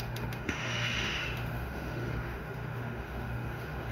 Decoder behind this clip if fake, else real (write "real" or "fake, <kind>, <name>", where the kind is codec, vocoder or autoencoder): fake, autoencoder, DAC-VAE